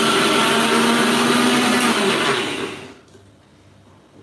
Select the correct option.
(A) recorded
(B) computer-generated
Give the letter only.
A